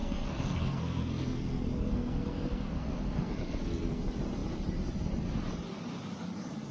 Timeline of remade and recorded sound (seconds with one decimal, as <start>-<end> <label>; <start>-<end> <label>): 0.0-4.0 remade; 4.0-6.7 recorded

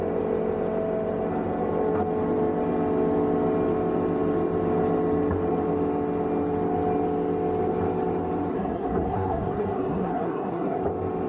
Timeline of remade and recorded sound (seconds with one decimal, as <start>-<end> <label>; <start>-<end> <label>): 0.0-8.5 recorded; 8.5-10.8 remade; 10.8-11.3 recorded